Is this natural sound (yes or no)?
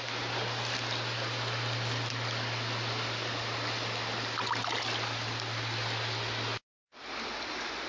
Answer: yes